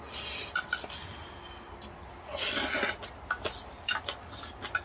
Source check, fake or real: real